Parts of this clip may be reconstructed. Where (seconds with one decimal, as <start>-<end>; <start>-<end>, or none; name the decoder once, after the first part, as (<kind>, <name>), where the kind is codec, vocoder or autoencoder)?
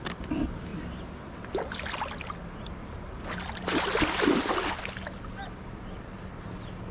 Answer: none